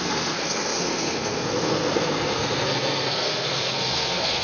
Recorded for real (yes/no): no